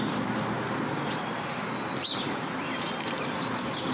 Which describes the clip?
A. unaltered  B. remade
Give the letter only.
B